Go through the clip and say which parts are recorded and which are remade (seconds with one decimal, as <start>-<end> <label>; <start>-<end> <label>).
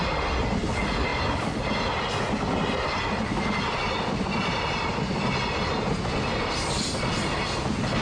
0.0-8.0 recorded